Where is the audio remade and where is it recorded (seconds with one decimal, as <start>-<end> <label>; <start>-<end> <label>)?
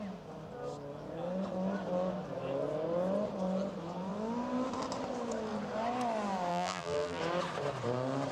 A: 0.0-6.5 recorded; 6.5-7.2 remade; 7.2-8.3 recorded